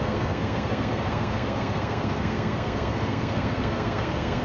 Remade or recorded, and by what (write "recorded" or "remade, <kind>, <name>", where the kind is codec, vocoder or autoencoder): remade, codec, SNAC